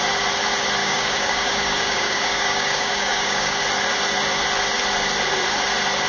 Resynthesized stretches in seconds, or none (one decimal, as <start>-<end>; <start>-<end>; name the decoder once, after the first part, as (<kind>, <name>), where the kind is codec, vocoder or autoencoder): 0.8-3.6 (codec, DAC)